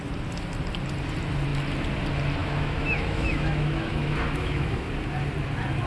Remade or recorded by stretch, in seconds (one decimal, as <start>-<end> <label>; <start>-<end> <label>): 0.0-2.4 recorded; 2.4-4.9 remade; 4.9-5.9 recorded